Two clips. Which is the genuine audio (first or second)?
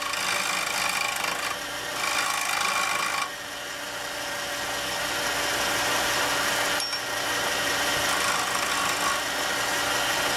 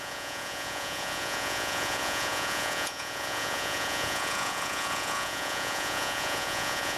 first